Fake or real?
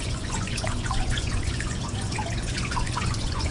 fake